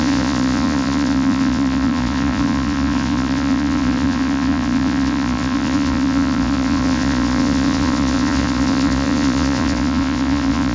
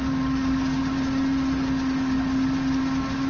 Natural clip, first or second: second